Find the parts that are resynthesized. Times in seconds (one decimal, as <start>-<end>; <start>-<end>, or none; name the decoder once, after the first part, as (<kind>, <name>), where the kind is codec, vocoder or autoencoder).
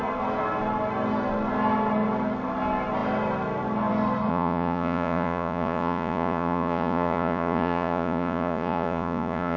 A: 4.3-9.6 (vocoder, Vocos)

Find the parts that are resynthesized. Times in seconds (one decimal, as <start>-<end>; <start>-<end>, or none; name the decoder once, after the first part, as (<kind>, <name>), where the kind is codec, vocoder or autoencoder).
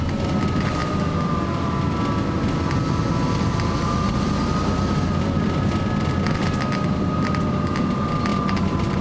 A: none